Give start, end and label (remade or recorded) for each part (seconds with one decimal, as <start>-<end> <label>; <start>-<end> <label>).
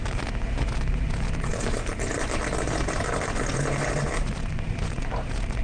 0.0-5.6 remade